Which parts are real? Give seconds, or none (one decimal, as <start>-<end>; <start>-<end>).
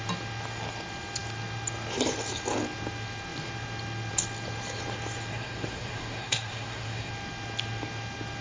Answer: 0.0-5.3; 7.1-8.4